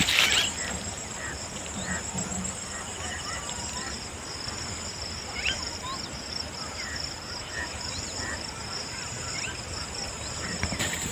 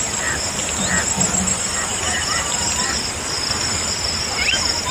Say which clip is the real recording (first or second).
second